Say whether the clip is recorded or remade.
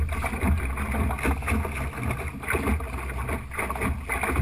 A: recorded